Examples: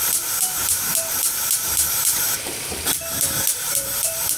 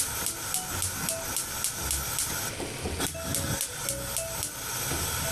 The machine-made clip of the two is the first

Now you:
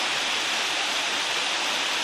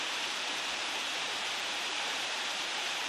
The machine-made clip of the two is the second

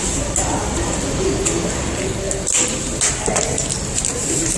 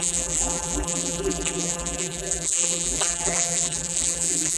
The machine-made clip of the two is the second